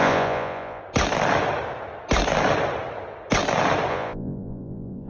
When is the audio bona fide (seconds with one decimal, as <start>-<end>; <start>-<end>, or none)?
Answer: 0.8-3.9